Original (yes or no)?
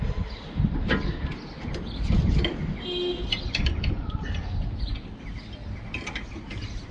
yes